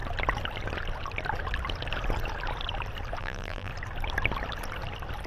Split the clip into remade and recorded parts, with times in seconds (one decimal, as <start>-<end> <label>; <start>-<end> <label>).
0.0-3.2 recorded; 3.2-3.7 remade; 3.7-5.3 recorded

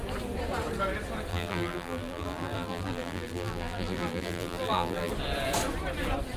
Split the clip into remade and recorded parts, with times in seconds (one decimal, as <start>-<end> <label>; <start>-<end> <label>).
0.0-1.3 recorded; 1.3-5.1 remade; 5.1-6.4 recorded

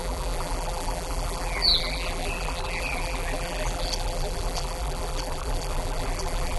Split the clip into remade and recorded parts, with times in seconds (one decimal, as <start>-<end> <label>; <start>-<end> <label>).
0.0-6.6 remade